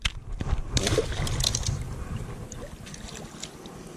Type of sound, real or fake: fake